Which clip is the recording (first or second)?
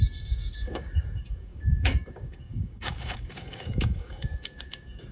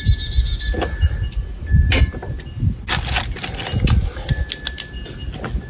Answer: second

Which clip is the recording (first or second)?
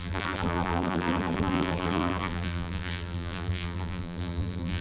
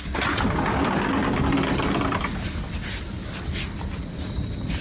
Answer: second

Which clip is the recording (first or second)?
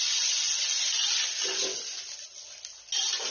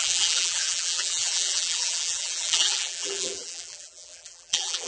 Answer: first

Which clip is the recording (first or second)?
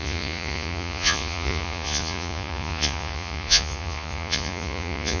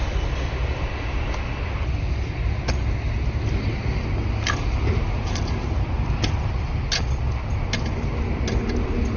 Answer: second